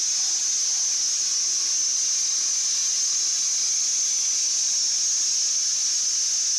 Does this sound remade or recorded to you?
recorded